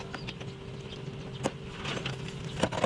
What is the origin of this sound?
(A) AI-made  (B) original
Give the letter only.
B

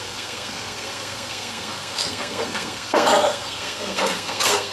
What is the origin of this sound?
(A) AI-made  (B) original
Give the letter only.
A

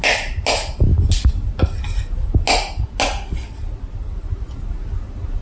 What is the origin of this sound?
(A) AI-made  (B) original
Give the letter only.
B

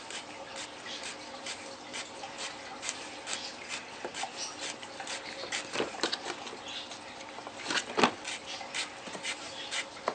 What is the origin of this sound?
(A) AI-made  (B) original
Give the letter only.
B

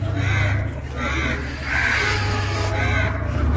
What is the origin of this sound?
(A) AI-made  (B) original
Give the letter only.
B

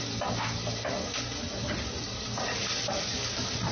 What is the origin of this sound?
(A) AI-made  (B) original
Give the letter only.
B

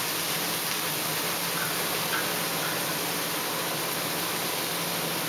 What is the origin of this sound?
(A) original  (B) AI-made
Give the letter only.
A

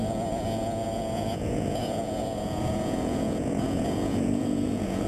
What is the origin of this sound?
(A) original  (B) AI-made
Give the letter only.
B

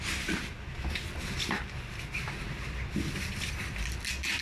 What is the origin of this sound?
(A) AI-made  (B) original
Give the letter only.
B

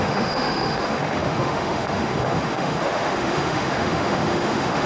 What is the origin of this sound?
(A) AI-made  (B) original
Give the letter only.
A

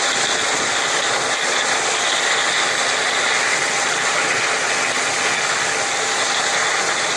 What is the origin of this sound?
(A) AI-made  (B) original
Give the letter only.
B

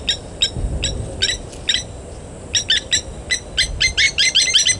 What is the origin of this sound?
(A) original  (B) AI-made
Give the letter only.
A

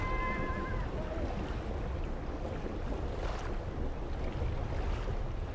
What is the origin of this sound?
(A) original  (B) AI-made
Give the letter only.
A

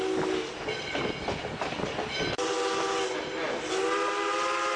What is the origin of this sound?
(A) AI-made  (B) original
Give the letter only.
B